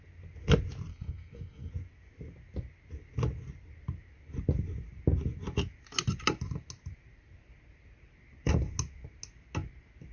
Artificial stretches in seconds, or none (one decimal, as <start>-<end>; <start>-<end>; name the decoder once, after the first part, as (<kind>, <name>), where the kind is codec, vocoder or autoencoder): 0.9-1.7 (codec, SNAC)